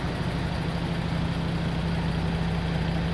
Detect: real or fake real